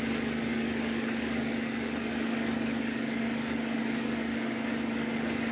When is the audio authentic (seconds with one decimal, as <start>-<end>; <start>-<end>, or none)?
none